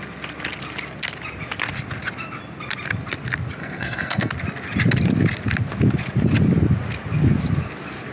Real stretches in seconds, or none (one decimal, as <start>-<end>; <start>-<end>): 0.0-3.6; 4.3-8.1